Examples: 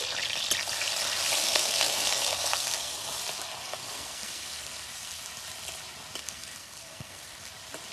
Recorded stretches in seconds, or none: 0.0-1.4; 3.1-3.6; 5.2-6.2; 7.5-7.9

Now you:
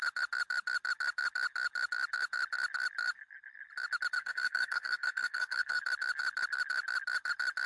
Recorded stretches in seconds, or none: 0.0-4.2; 5.8-7.7